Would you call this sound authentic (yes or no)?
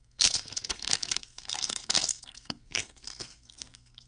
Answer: no